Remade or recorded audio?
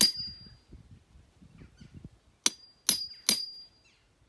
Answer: recorded